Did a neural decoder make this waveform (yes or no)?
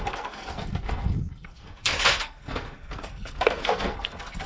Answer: yes